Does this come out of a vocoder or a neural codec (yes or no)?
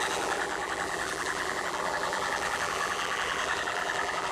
yes